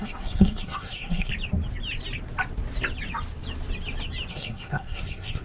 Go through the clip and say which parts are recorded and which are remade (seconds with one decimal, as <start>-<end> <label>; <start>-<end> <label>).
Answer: 0.0-1.3 remade; 1.3-4.3 recorded; 4.3-5.4 remade